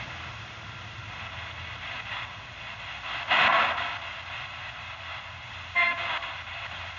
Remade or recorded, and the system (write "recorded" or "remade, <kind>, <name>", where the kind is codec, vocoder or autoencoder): recorded